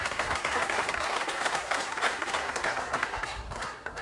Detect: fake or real fake